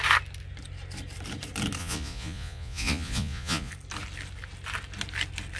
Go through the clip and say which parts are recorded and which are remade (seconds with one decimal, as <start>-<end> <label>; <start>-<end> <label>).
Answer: 0.0-1.8 recorded; 1.8-3.7 remade; 3.7-5.6 recorded